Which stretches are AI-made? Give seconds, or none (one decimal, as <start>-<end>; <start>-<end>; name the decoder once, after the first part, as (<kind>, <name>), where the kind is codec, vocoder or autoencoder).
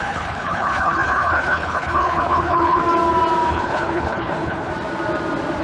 0.0-2.8 (codec, HILCodec); 3.5-4.7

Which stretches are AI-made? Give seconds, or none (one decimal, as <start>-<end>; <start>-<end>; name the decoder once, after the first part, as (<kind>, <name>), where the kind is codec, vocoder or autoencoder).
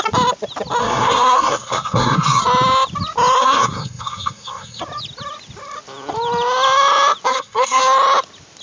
0.8-2.4 (codec, SNAC); 3.4-4.8; 7.3-7.8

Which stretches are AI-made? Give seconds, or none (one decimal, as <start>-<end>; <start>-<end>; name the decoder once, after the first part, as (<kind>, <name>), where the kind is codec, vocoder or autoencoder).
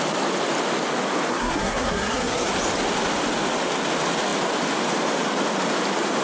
1.3-2.5 (codec, SNAC)